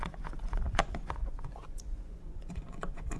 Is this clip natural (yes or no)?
no